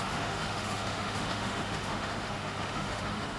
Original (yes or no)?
no